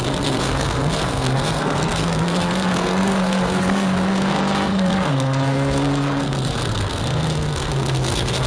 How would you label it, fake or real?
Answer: fake